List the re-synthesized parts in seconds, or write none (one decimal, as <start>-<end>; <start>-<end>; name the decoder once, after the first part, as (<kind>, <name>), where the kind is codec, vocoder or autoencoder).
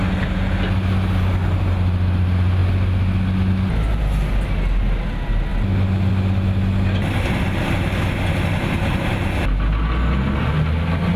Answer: none